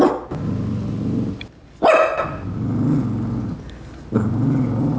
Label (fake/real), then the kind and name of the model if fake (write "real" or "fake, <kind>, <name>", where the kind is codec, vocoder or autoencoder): real